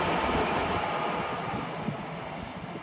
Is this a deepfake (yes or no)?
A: no